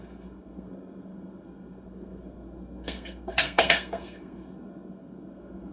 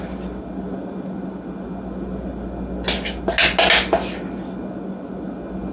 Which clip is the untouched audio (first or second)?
second